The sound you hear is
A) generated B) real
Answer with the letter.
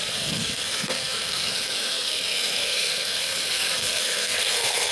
A